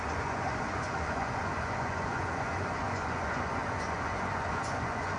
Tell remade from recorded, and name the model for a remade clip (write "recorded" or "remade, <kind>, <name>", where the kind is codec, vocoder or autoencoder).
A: remade, vocoder, Vocos